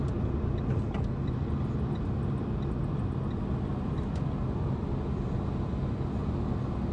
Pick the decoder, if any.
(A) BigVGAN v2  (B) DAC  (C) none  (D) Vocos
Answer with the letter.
C